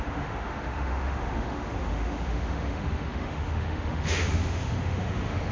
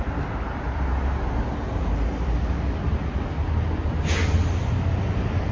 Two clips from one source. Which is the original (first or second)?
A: second